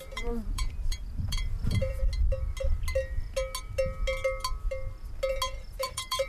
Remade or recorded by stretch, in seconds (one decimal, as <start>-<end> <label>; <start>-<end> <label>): 0.0-1.8 remade; 1.8-5.6 recorded; 5.6-6.3 remade